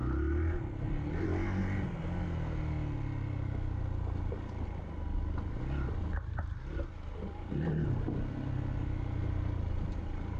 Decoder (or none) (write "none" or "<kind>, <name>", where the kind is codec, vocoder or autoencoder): none